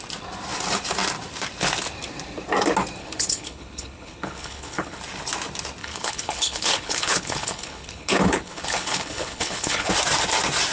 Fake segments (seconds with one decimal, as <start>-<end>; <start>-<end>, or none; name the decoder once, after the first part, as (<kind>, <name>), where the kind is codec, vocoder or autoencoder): 3.0-5.0 (codec, HILCodec); 5.8-9.9